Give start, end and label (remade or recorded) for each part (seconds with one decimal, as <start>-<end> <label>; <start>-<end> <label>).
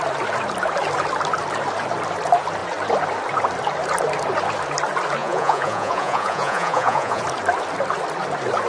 0.0-5.2 recorded; 5.2-7.2 remade; 7.2-8.7 recorded